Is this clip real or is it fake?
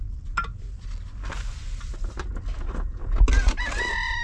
real